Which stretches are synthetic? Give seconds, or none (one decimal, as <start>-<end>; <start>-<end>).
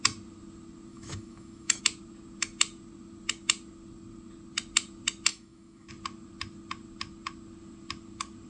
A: 0.9-1.8; 5.3-5.9